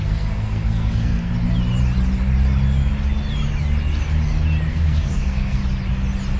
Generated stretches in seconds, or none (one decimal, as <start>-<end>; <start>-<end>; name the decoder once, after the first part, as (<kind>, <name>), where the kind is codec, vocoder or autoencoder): 0.0-1.3 (codec, SNAC); 4.7-5.6